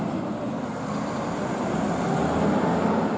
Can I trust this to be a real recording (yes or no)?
yes